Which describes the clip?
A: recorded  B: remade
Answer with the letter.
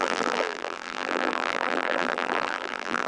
B